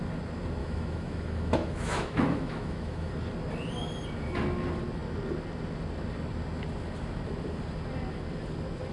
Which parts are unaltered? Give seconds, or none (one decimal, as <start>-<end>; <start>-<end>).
0.0-0.6; 3.1-8.9

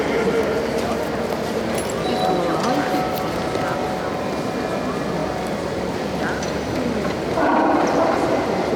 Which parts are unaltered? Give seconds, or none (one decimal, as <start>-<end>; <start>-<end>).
0.0-8.8

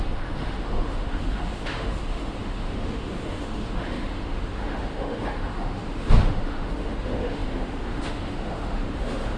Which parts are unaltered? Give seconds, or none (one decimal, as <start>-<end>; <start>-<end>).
none

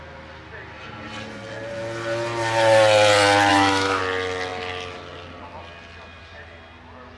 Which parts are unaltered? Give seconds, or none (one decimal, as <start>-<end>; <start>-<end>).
0.0-3.5; 4.0-7.2

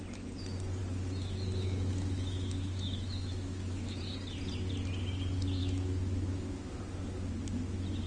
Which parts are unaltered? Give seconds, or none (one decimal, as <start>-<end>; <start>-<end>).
0.0-0.8; 4.0-5.6; 6.8-8.1

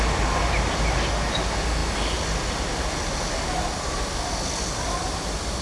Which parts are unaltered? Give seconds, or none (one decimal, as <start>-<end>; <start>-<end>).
0.0-5.6